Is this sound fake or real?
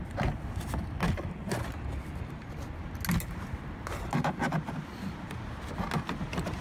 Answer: real